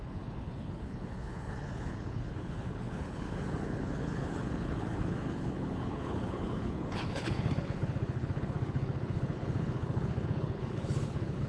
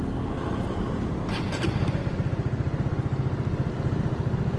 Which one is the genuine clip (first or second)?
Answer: second